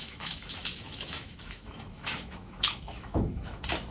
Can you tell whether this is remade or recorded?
remade